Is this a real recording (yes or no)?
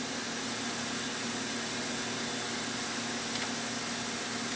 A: yes